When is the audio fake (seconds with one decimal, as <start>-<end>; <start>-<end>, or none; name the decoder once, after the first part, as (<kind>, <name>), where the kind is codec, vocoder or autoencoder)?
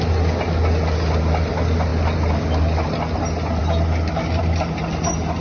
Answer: none